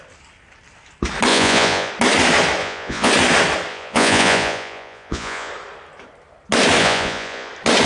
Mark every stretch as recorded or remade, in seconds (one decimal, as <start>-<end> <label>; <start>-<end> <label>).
0.0-1.3 recorded; 1.3-1.9 remade; 1.9-2.6 recorded; 2.6-3.1 remade; 3.1-3.7 recorded; 3.7-5.5 remade; 5.5-6.8 recorded; 6.8-7.5 remade; 7.5-7.9 recorded